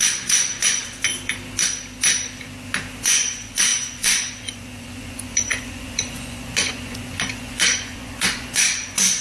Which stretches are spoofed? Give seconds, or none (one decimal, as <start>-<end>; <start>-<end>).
0.0-1.1; 3.0-9.2